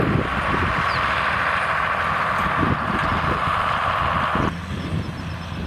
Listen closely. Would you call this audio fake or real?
real